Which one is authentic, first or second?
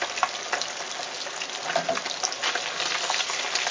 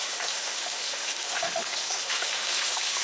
first